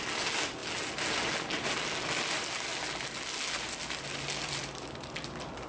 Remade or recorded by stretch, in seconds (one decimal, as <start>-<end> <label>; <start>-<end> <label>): 0.0-5.7 recorded